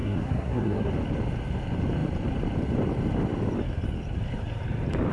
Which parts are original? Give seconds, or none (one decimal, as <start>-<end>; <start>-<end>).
0.9-5.1